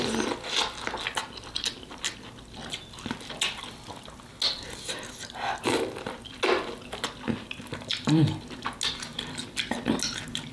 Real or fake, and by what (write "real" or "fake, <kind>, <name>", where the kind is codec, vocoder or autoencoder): real